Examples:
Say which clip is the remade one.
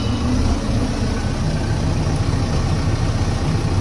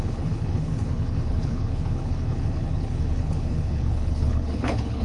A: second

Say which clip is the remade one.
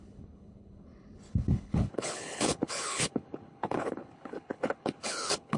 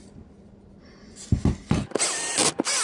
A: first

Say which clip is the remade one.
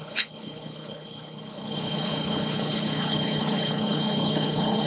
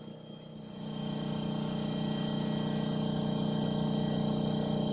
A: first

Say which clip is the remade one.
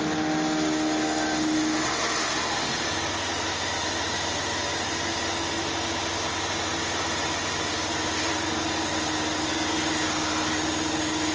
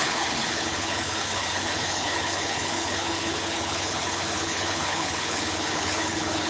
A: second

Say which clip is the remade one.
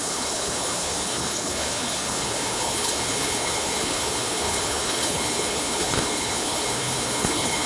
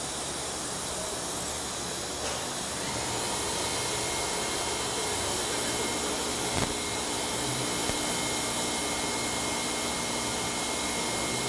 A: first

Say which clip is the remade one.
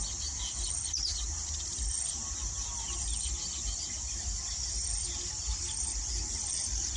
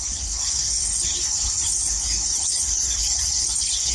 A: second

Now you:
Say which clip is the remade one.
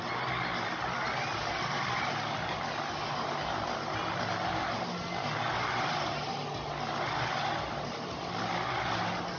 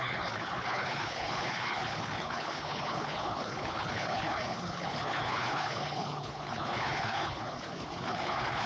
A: second